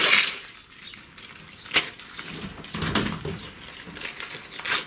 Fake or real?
real